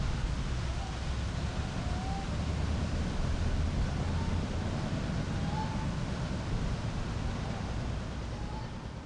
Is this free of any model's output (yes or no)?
yes